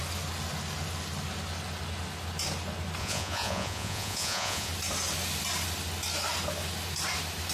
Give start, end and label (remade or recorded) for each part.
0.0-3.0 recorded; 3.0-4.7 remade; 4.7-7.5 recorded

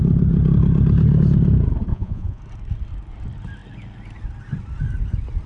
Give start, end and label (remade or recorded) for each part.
0.0-1.9 recorded; 1.9-2.4 remade; 2.4-5.5 recorded